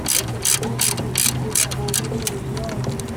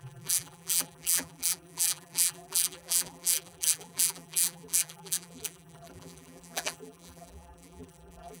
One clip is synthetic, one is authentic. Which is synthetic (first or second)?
second